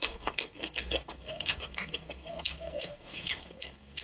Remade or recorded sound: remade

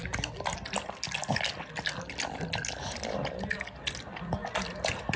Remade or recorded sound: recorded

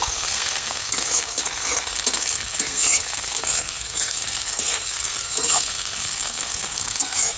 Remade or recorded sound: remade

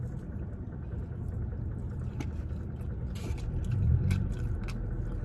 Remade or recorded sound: recorded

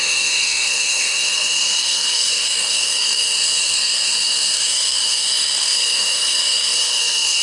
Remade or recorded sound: remade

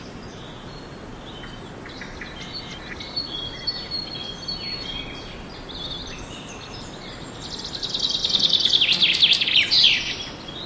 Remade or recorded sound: recorded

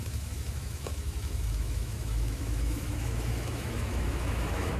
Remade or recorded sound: remade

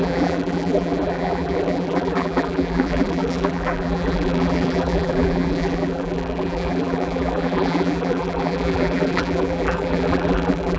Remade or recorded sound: remade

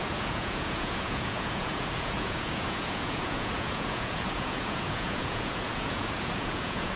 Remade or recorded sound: remade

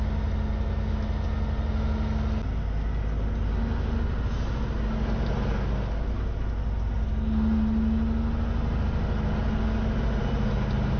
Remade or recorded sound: recorded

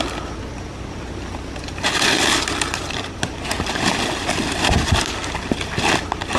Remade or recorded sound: recorded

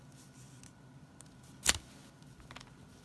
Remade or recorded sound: recorded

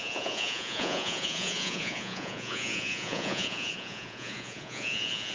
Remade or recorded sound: remade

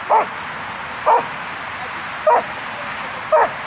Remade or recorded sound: recorded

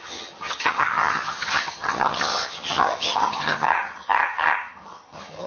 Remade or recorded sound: remade